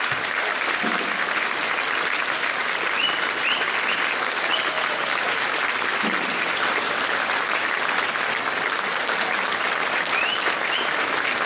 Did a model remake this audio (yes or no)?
no